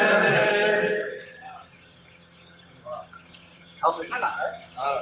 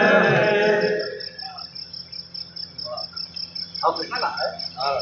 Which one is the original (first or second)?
second